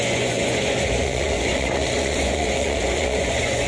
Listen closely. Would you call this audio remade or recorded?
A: remade